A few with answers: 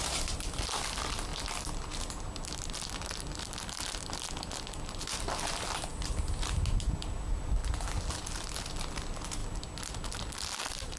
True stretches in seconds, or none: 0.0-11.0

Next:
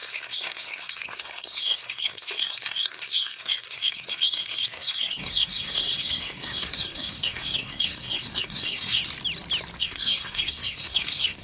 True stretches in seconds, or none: 9.0-9.8

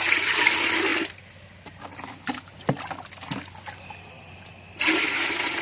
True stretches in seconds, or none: 0.0-5.6